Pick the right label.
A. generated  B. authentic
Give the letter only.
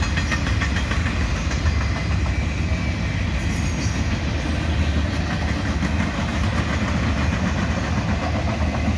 B